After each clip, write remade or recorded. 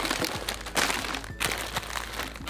recorded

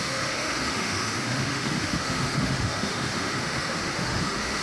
remade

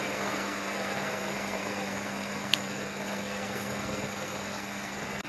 remade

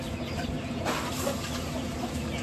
recorded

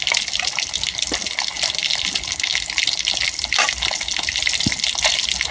recorded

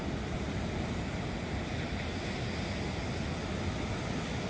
recorded